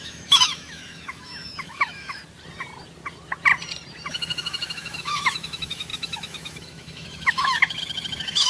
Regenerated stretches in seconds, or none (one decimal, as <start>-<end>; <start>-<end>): 0.0-2.2; 4.1-8.5